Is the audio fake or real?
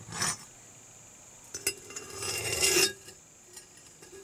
real